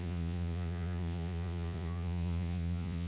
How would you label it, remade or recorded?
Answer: remade